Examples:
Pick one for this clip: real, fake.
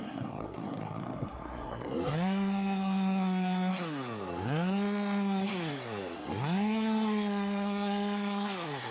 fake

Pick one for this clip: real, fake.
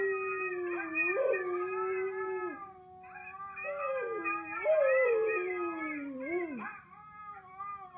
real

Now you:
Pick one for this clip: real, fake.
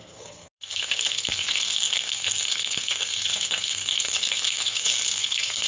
fake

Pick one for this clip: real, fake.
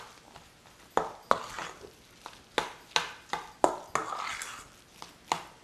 real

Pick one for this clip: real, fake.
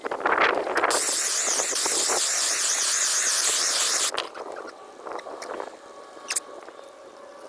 real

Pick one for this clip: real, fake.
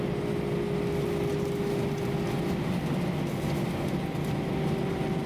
real